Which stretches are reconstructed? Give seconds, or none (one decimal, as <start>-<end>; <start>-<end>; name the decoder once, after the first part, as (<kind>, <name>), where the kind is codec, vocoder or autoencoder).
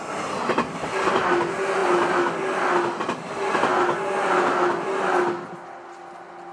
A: none